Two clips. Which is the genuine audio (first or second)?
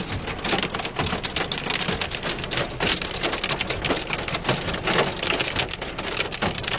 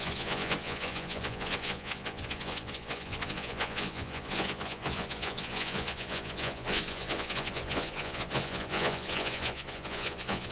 first